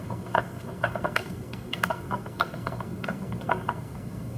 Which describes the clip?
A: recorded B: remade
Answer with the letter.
B